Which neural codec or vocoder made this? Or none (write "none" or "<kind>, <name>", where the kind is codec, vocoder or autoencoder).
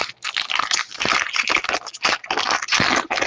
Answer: none